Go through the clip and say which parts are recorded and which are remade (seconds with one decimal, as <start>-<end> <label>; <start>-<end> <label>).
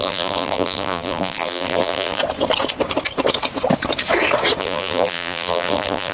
0.0-2.2 remade; 2.2-4.6 recorded; 4.6-6.1 remade